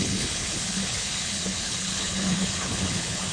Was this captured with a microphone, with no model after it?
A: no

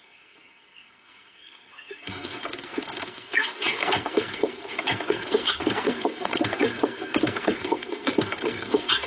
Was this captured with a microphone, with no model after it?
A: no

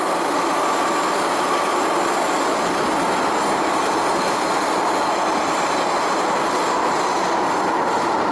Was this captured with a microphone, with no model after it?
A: yes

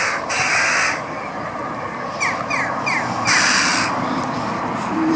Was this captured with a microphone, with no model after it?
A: yes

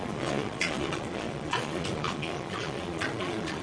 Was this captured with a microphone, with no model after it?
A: no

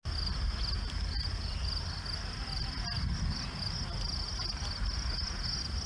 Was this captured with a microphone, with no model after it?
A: yes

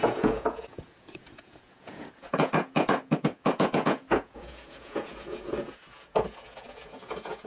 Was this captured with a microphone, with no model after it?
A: no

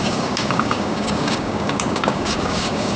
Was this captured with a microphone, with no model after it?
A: no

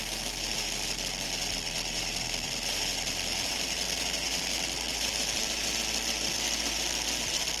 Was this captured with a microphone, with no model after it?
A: yes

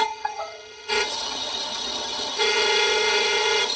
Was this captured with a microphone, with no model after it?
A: no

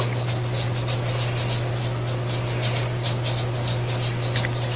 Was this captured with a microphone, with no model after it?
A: yes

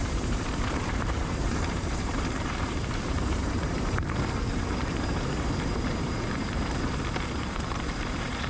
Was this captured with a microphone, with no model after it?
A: no